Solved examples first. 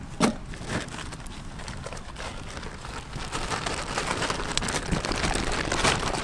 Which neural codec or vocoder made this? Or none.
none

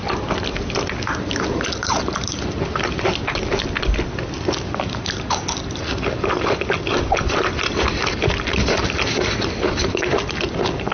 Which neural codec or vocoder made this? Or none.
none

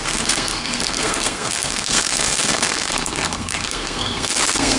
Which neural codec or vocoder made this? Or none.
codec, SNAC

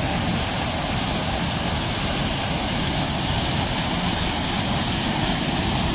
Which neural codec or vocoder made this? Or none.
none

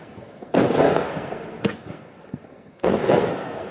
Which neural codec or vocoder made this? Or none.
codec, SNAC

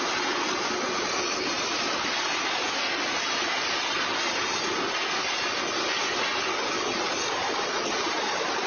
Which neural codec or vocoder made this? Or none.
none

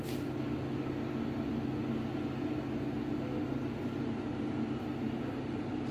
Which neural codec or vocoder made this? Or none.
none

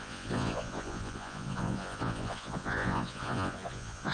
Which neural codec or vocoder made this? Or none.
vocoder, Vocos